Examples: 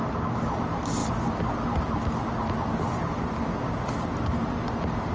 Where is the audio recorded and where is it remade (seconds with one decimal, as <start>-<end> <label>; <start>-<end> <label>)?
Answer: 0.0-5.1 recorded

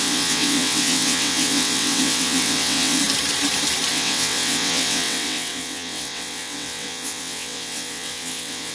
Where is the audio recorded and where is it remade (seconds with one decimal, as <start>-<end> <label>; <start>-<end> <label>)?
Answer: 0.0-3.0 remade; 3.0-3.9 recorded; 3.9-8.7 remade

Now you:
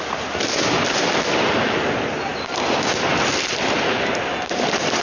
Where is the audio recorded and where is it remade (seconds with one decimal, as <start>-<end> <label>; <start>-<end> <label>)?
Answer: 0.0-5.0 recorded